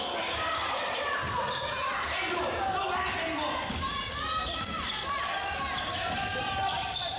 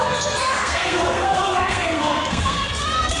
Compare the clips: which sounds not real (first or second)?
second